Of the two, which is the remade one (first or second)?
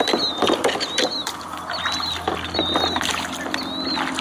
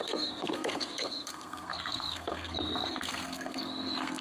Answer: second